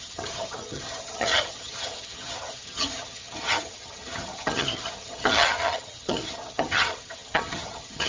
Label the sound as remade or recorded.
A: remade